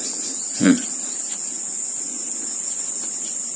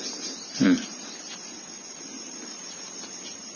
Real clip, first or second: second